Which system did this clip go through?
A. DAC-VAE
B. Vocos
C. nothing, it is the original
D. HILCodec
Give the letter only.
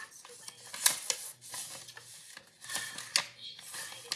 C